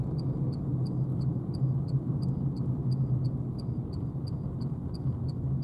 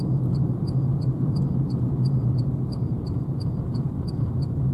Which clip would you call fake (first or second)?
second